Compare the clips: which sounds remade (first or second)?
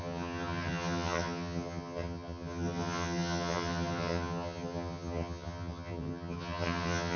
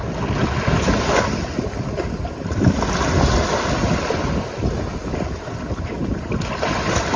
first